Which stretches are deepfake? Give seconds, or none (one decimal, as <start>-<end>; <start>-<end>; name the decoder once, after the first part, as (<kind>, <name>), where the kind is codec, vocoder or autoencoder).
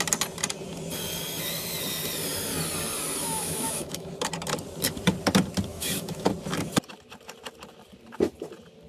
3.2-4.1 (autoencoder, DAC-VAE); 5.7-6.3